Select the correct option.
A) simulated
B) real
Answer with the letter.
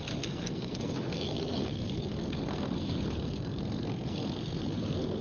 A